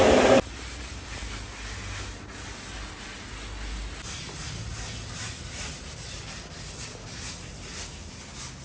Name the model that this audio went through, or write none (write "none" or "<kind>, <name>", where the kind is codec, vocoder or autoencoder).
none